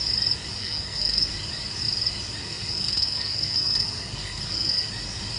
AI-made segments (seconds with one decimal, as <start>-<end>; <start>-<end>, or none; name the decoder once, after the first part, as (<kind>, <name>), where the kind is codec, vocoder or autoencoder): 0.6-1.3 (codec, SNAC); 2.4-4.9